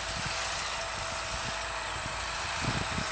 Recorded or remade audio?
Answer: recorded